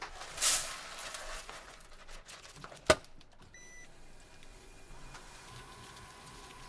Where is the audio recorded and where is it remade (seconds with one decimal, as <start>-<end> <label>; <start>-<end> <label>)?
0.0-1.0 recorded; 1.0-2.8 remade; 2.8-4.5 recorded; 4.5-6.7 remade